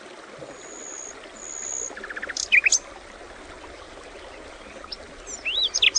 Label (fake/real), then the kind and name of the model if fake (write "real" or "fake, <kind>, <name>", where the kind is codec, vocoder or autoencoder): real